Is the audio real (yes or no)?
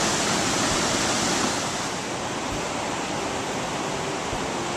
yes